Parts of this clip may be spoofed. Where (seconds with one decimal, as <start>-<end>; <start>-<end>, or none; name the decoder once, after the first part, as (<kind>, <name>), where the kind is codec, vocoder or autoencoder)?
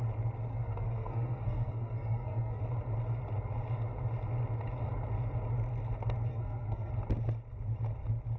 0.5-2.6 (codec, SNAC); 6.3-6.9